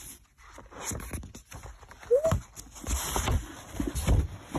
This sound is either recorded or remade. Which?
recorded